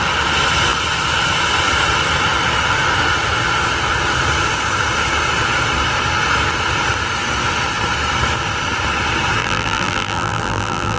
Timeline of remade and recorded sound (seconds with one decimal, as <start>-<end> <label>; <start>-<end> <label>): 0.0-9.4 recorded; 9.4-11.0 remade